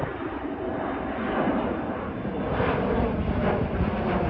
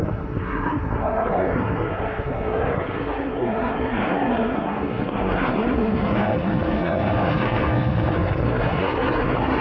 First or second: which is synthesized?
second